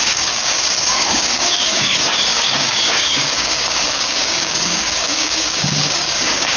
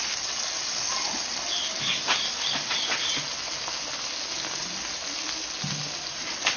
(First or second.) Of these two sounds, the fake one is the first